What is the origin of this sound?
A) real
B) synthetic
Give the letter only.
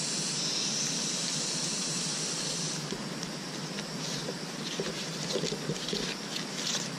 A